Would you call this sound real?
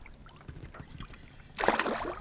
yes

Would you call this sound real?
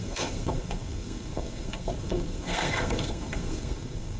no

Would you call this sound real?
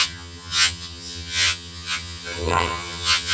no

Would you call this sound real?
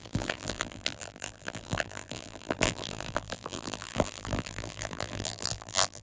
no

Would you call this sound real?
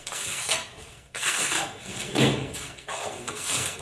no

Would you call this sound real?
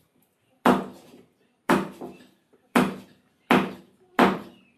no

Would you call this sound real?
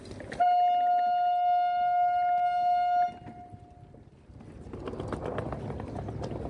yes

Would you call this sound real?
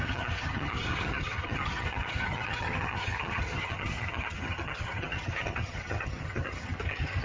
no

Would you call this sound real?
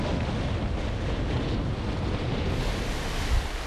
yes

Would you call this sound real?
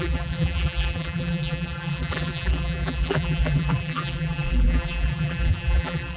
no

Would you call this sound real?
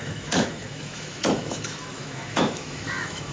no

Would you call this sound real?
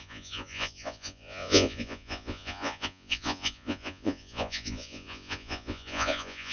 no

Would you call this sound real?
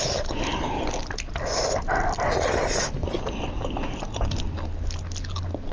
yes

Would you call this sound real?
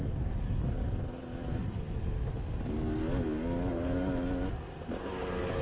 yes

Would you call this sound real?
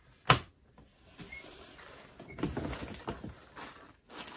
yes